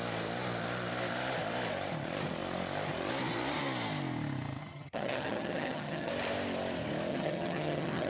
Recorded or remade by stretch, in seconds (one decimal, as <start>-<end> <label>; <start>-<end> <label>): 0.0-4.6 recorded; 4.6-6.1 remade; 6.1-7.1 recorded; 7.1-8.1 remade